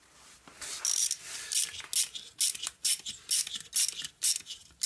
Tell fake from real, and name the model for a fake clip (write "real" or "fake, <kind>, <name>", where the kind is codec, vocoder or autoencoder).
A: real